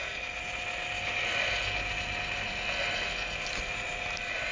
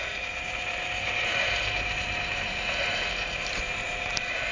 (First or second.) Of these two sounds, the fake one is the second